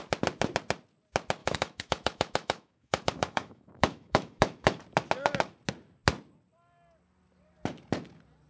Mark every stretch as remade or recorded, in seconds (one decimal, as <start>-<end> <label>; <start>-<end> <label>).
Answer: 0.0-1.4 recorded; 1.4-4.8 remade; 4.8-8.5 recorded